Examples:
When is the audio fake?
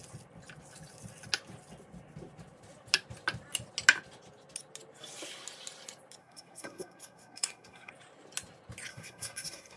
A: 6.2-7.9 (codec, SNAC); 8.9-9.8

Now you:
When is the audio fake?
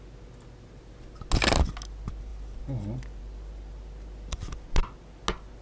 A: none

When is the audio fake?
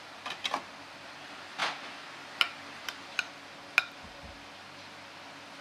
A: none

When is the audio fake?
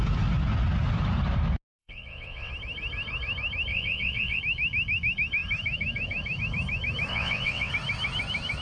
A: 1.8-2.5 (vocoder, WaveNeXt); 3.7-4.4; 7.1-7.7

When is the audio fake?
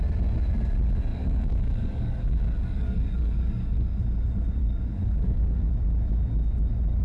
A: 1.1-4.0 (codec, DAC); 4.6-5.7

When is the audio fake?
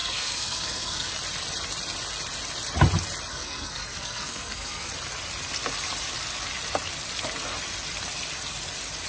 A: 0.0-1.1 (codec, SNAC); 3.3-4.9